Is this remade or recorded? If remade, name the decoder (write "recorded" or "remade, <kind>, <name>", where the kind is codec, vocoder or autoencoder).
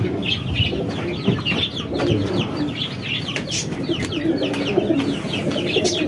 remade, vocoder, BigVGAN v2